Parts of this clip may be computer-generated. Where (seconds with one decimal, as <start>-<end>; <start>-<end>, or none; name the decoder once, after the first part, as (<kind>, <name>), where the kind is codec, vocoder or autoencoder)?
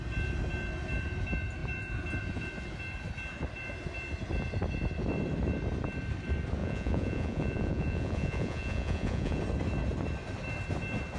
6.6-9.4 (vocoder, Vocos)